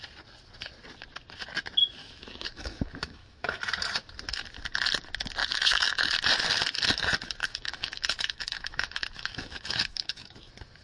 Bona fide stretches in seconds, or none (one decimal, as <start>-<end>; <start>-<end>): 0.0-2.0; 3.6-5.4; 6.1-7.4; 10.4-10.8